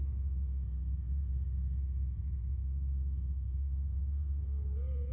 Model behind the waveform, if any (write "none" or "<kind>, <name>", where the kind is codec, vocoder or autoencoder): codec, SNAC